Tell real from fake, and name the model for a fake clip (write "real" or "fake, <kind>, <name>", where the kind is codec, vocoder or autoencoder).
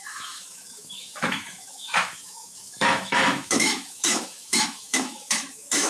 fake, autoencoder, DAC-VAE